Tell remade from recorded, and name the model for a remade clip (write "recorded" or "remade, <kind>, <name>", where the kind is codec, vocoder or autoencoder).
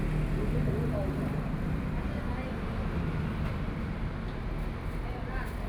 recorded